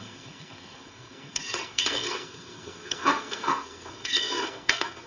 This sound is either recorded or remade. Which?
remade